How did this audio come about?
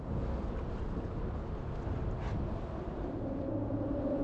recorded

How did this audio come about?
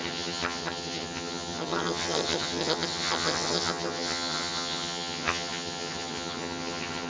remade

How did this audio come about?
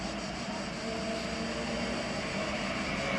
recorded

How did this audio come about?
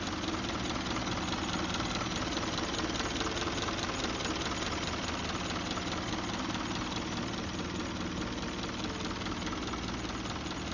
recorded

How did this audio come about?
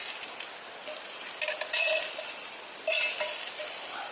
recorded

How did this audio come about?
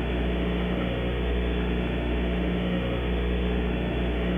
remade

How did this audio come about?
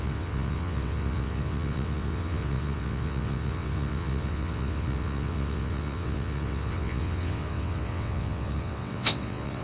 remade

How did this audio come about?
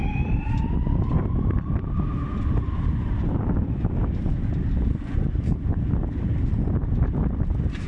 remade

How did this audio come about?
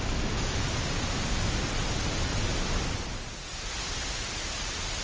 recorded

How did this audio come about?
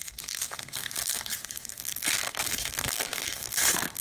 remade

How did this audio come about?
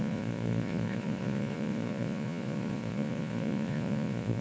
remade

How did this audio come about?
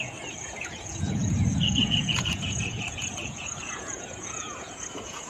remade